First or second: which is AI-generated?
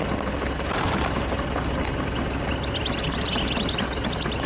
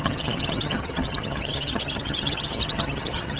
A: second